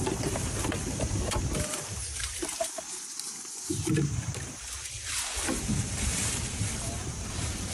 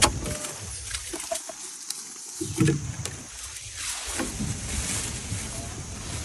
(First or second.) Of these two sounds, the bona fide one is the second